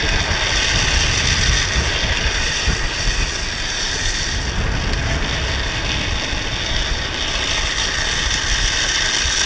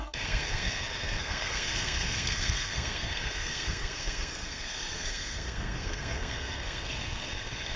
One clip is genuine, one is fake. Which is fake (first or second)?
second